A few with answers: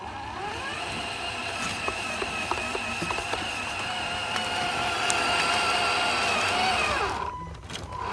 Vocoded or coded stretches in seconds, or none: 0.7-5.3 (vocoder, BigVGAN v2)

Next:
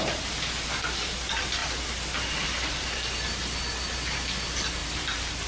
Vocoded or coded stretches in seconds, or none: 4.8-5.5 (vocoder, BigVGAN v2)

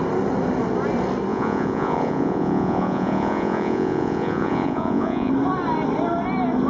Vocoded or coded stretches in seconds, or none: 1.3-5.3 (vocoder, Vocos)

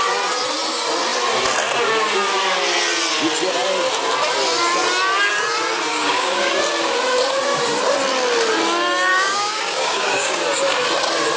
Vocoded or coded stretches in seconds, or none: 5.9-6.5 (codec, DAC); 9.1-10.4

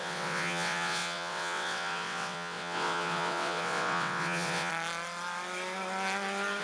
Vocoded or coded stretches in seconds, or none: 0.0-4.7 (vocoder, WaveNeXt)